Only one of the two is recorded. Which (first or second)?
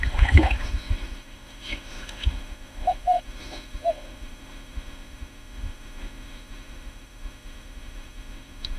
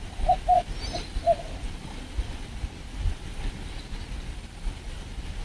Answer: second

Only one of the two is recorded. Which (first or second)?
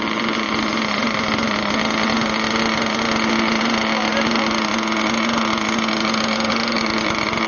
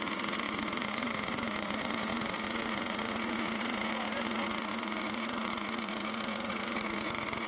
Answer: first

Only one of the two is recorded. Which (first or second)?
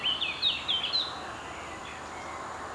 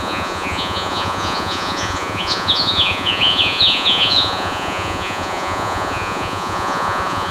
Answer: first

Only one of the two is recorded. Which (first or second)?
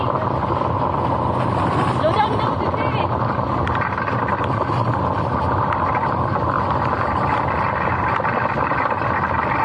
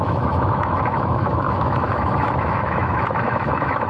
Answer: first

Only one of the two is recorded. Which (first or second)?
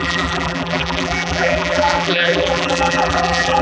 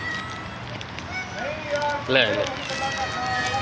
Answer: second